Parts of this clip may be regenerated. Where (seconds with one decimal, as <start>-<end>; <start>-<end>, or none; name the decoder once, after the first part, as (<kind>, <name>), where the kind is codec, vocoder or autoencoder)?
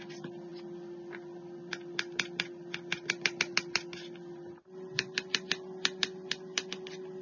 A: none